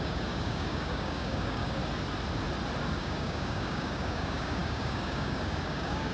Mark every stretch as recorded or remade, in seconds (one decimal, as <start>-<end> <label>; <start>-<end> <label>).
0.0-1.8 remade; 1.8-3.0 recorded; 3.0-6.1 remade